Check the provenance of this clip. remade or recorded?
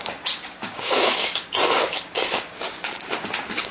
remade